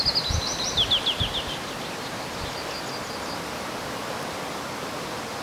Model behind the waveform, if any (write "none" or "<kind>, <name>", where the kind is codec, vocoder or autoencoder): none